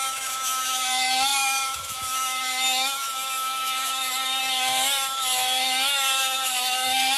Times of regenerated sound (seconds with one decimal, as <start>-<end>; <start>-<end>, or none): 0.0-7.2